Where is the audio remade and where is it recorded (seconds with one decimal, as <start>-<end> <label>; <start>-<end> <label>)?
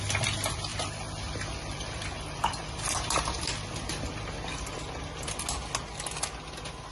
0.0-0.7 recorded; 0.7-4.8 remade; 4.8-6.9 recorded